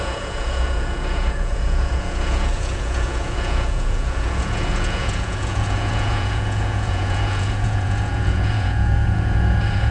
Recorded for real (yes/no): no